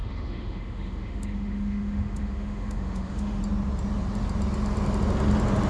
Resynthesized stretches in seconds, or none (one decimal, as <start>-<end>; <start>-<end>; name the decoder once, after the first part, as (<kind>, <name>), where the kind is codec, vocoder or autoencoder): 0.0-3.4 (autoencoder, DAC-VAE)

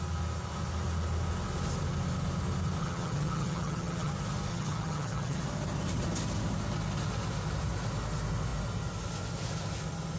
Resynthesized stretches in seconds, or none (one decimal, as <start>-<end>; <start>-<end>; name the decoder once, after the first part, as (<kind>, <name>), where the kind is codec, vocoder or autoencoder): 2.8-4.1 (vocoder, HiFi-GAN); 4.5-5.4